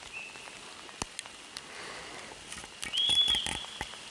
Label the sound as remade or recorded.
recorded